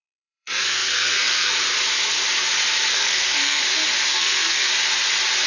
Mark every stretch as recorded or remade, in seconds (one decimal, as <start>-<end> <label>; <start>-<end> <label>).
0.0-1.5 remade; 1.5-2.9 recorded; 2.9-3.6 remade; 3.6-4.1 recorded; 4.1-4.7 remade; 4.7-5.5 recorded